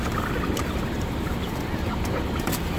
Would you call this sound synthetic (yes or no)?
yes